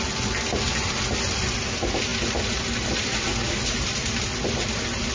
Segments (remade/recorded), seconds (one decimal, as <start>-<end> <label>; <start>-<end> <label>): 0.0-5.1 recorded